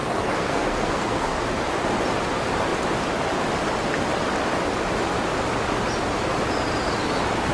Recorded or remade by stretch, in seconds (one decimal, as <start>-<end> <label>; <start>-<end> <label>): 0.0-1.4 remade; 1.4-7.5 recorded